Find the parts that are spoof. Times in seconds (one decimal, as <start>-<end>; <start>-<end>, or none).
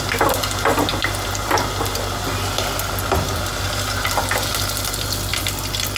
none